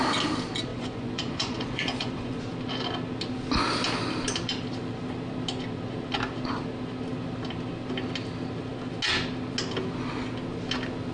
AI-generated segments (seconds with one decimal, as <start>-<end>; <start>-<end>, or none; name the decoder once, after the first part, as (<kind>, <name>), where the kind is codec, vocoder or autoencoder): 0.7-2.4 (vocoder, Vocos)